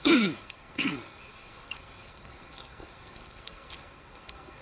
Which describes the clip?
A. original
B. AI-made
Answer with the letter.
B